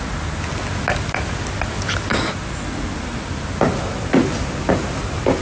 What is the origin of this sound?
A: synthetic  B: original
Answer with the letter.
B